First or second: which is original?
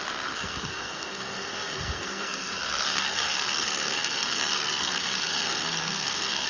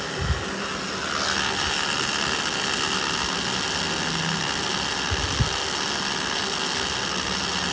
second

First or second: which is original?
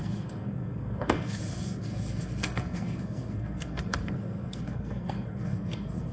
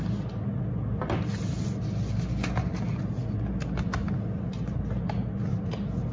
second